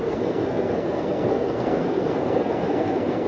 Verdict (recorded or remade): remade